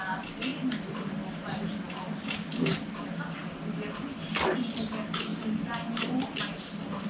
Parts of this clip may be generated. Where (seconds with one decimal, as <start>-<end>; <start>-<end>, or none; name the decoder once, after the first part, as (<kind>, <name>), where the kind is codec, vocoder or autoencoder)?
0.0-3.4 (vocoder, BigVGAN v2); 4.1-5.3; 6.4-7.1